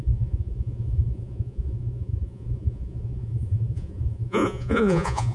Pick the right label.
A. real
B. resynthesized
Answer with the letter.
B